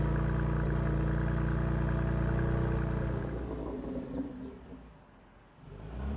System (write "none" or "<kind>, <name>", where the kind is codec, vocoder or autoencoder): none